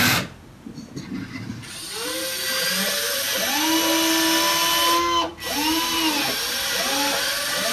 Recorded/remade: recorded